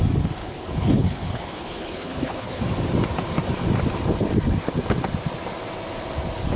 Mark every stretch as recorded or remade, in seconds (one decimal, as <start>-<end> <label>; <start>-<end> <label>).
0.0-0.4 recorded; 0.4-2.6 remade; 2.6-6.6 recorded